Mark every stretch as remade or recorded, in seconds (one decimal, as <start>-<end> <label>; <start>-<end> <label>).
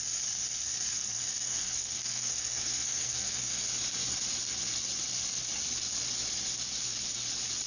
0.0-0.9 recorded; 0.9-3.6 remade; 3.6-7.7 recorded